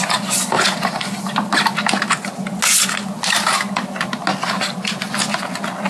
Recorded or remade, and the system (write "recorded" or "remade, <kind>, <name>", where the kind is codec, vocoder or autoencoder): recorded